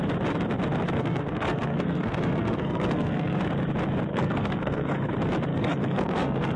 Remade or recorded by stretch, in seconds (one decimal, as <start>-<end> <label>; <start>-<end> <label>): 0.0-1.0 recorded; 1.0-3.4 remade; 3.4-4.1 recorded; 4.1-5.1 remade; 5.1-5.5 recorded; 5.5-6.6 remade